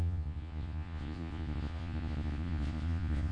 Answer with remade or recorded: remade